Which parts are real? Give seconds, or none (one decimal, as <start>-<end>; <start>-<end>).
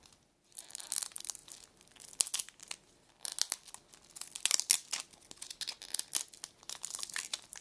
0.0-7.6